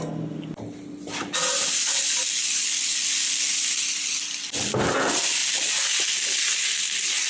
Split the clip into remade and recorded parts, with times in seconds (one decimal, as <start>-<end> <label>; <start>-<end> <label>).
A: 0.0-7.3 recorded